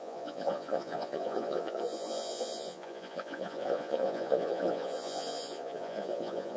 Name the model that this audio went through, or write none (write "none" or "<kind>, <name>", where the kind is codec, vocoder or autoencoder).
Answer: vocoder, Vocos